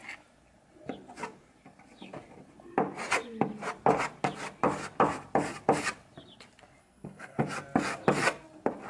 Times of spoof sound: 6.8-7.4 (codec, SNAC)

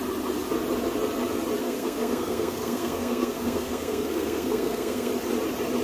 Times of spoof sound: 1.6-5.1 (codec, SNAC)

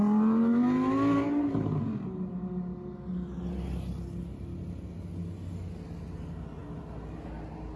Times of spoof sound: none

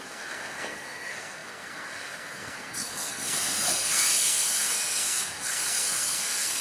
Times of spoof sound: 0.0-6.6 (codec, SNAC)